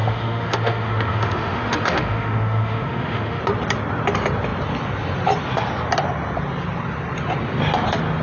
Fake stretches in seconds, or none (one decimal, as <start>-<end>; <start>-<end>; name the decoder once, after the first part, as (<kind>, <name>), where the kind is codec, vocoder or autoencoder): 0.0-3.4 (autoencoder, DAC-VAE)